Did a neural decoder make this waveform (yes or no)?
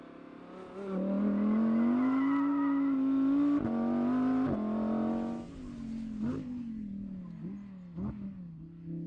no